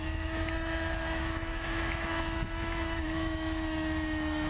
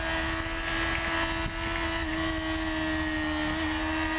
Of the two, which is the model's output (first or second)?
first